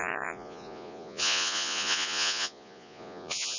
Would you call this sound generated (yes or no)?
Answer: yes